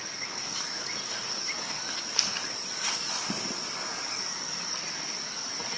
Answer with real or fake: fake